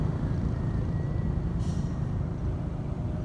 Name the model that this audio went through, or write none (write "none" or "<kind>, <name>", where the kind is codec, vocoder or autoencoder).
none